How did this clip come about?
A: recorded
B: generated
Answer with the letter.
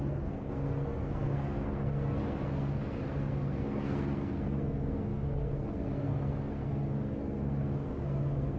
B